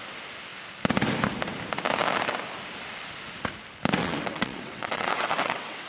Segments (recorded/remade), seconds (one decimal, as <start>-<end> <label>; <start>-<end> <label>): 0.0-4.0 recorded; 4.0-5.9 remade